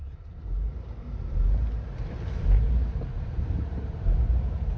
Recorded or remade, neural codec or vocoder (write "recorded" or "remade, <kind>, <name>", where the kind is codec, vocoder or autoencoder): remade, vocoder, BigVGAN v2